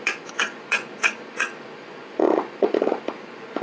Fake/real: fake